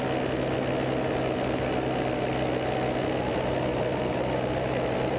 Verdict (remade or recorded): recorded